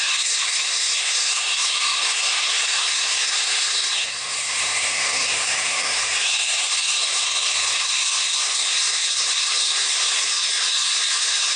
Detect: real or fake fake